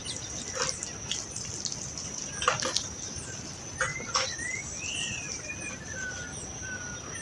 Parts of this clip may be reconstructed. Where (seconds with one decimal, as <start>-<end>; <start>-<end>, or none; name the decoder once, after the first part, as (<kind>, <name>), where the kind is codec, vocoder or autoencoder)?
none